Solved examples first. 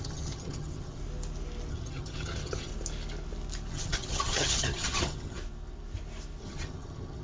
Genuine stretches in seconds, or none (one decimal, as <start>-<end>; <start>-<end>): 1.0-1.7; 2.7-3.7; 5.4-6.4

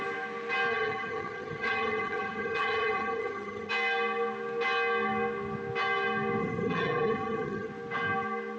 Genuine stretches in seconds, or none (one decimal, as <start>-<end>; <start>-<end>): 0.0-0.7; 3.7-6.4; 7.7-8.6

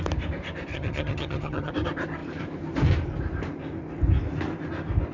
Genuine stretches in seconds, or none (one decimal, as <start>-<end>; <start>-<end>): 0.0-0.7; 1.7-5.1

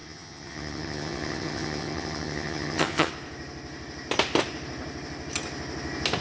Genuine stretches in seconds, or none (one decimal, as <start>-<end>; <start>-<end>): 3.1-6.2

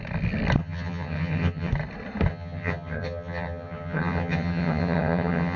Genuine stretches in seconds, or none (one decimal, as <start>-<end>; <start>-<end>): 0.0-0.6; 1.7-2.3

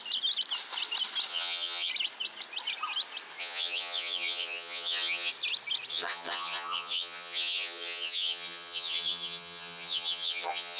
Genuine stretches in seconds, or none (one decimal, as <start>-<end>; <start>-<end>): 0.0-1.3; 1.9-3.4; 5.3-5.9

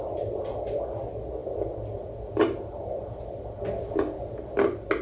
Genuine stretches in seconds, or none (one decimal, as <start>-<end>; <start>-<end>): 0.0-5.0

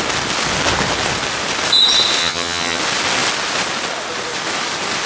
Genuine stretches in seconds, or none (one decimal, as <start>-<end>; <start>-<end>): 0.0-2.2; 2.8-5.1